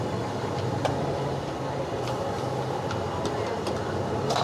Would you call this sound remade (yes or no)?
no